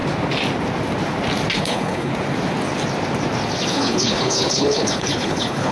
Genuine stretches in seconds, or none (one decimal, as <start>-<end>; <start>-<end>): 0.0-1.6; 2.1-3.7